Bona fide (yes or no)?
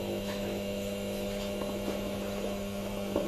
no